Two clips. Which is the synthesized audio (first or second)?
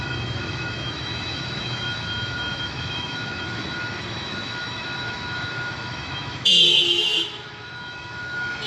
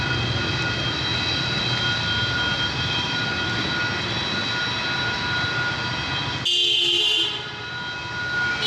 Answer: first